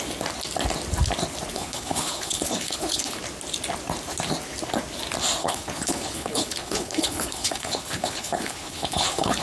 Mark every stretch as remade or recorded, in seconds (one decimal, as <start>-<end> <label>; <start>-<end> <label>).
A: 0.0-1.5 recorded; 1.5-3.2 remade; 3.2-5.4 recorded; 5.4-9.4 remade